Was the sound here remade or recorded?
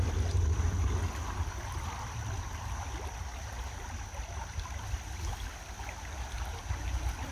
recorded